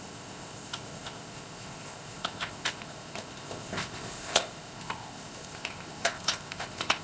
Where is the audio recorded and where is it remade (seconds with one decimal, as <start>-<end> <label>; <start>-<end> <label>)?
0.0-7.0 remade